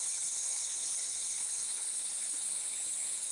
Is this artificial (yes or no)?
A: yes